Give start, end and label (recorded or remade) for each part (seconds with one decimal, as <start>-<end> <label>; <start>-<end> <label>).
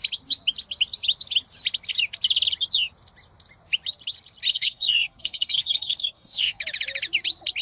0.0-4.5 recorded; 4.5-6.6 remade; 6.6-7.6 recorded